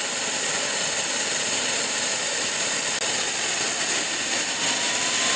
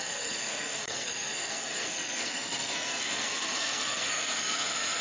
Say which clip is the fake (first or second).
second